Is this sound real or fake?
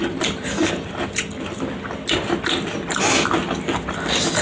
real